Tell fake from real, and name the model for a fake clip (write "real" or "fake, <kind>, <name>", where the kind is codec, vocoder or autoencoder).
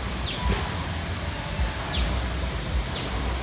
real